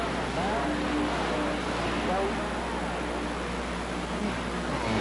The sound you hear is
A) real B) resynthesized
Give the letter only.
A